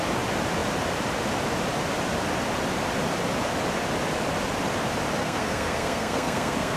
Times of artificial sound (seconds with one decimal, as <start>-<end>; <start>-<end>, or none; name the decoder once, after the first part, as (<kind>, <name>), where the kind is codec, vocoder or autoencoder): 5.2-6.8 (codec, SNAC)

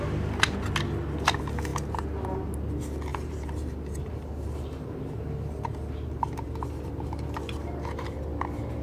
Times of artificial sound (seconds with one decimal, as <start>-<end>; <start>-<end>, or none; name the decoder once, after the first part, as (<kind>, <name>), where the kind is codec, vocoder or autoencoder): 3.1-7.3 (vocoder, BigVGAN v2)

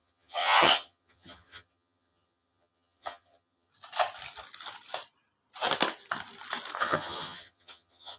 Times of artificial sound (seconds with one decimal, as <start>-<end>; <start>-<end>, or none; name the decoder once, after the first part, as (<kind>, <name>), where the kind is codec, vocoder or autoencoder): 0.0-3.7 (vocoder, HiFi-GAN); 6.8-8.2

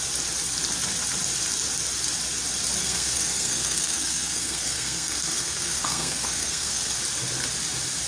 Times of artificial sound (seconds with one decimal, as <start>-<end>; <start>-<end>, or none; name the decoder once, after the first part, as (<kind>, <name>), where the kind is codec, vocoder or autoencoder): 2.8-7.0 (codec, SNAC)

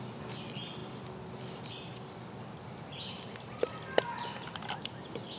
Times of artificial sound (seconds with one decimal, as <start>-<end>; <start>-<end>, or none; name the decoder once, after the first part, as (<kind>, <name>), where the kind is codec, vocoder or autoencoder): none

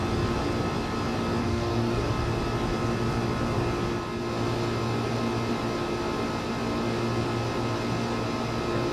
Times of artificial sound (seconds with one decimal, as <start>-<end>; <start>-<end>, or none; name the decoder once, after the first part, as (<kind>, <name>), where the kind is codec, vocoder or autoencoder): 1.4-2.1 (codec, DAC)